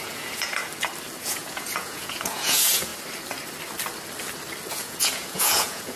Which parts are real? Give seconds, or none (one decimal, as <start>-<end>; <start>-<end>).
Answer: 0.6-1.2; 2.9-4.7